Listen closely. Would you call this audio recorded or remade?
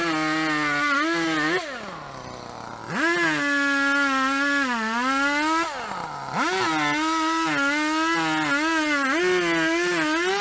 recorded